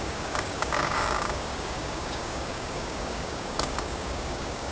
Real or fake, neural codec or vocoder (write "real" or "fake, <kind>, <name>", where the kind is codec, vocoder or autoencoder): fake, codec, DAC